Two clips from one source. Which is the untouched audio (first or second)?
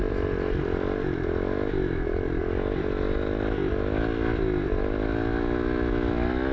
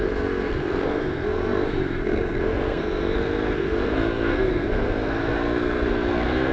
first